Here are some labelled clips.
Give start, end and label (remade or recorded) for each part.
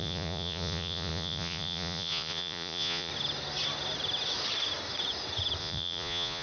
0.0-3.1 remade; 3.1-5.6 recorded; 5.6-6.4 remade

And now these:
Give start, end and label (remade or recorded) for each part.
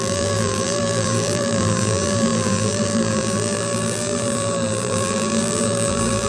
0.0-6.3 remade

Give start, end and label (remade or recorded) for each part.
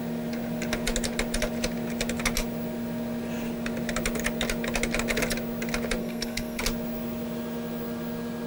0.0-6.0 recorded; 6.0-6.6 remade; 6.6-8.5 recorded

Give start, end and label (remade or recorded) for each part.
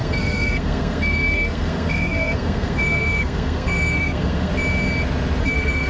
0.0-4.5 remade; 4.5-5.4 recorded; 5.4-5.9 remade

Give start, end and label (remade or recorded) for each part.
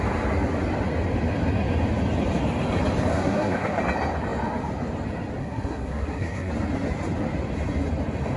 0.0-3.1 recorded; 3.1-3.8 remade; 3.8-5.4 recorded; 5.4-6.5 remade; 6.5-8.4 recorded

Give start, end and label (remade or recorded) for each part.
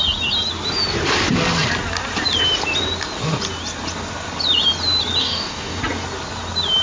0.0-5.2 recorded; 5.2-5.8 remade; 5.8-6.8 recorded